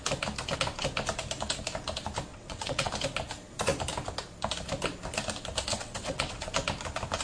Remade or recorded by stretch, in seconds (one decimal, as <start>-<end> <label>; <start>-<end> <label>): 0.0-2.3 recorded; 2.3-2.9 remade; 2.9-5.7 recorded; 5.7-6.5 remade; 6.5-7.2 recorded